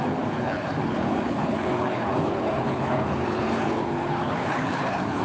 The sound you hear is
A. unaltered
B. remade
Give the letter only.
B